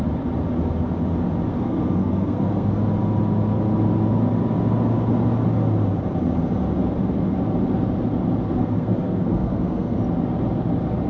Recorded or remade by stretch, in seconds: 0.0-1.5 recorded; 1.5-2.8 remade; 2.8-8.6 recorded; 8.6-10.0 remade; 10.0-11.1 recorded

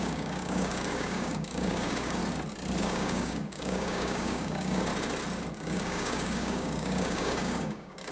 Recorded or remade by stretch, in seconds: 0.0-2.2 remade; 2.2-2.8 recorded; 2.8-4.9 remade; 4.9-5.5 recorded; 5.5-8.1 remade